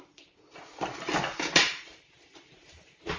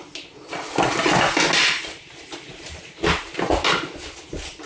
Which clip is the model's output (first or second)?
first